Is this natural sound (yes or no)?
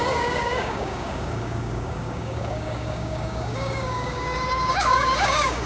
no